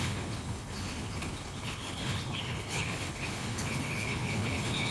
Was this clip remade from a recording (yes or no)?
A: yes